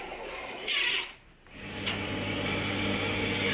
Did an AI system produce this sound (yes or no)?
no